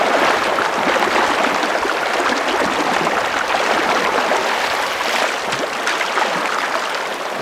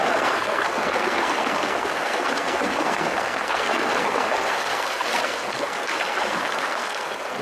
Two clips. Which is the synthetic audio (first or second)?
second